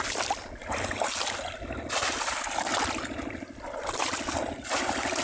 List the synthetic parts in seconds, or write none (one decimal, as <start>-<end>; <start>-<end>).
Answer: none